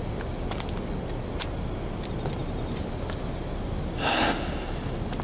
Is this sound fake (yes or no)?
no